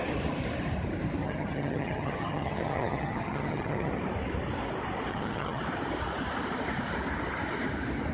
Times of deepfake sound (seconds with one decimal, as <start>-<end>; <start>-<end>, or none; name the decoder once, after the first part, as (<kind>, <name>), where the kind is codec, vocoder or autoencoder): 1.2-3.9 (vocoder, HiFi-GAN); 5.1-5.6